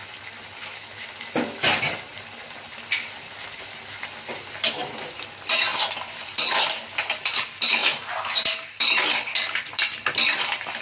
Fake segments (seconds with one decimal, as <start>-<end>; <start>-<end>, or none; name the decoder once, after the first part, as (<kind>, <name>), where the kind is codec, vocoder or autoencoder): 0.0-7.8 (vocoder, BigVGAN v2); 8.5-10.8